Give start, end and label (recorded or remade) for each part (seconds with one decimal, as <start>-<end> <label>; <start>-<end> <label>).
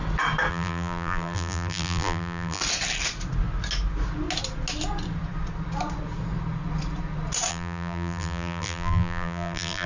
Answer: 0.0-0.5 recorded; 0.5-2.6 remade; 2.6-7.5 recorded; 7.5-9.9 remade